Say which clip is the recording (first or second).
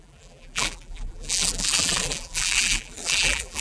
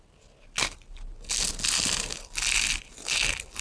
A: second